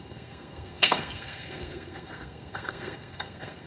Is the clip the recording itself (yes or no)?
no